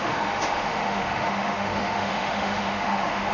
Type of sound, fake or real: fake